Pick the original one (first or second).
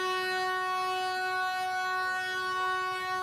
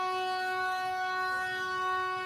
first